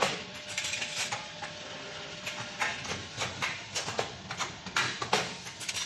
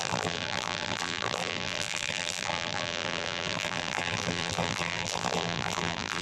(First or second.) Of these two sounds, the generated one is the second